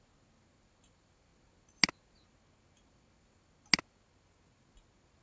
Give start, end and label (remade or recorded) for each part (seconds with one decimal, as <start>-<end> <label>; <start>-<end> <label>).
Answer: 0.0-5.2 recorded

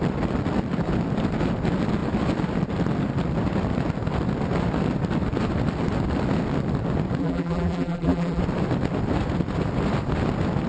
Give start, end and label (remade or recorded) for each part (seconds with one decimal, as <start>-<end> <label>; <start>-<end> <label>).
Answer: 0.0-7.2 recorded; 7.2-8.4 remade; 8.4-10.7 recorded